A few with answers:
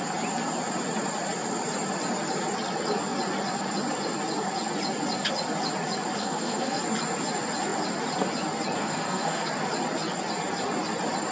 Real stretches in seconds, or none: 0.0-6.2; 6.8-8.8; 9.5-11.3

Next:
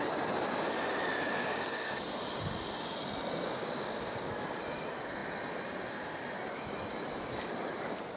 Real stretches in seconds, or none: 0.0-1.4; 1.9-3.6; 4.3-8.2

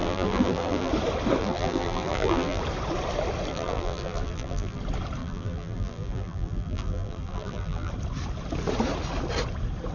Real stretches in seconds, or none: 0.9-1.4; 2.6-3.5; 4.8-5.2; 7.9-9.9